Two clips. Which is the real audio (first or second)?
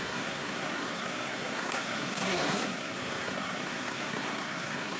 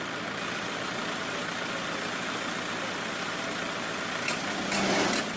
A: second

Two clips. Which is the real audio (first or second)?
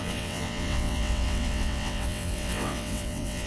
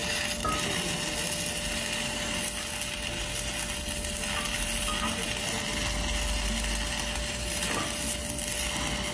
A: second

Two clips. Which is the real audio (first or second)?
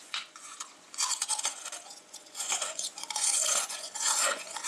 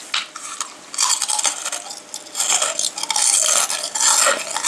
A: second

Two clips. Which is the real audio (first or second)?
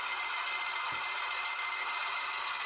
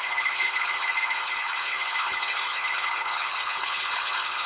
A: first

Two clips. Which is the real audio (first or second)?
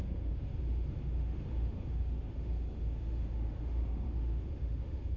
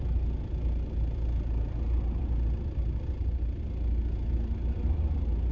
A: second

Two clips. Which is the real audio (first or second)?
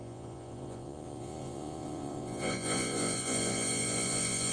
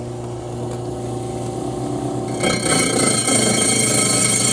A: second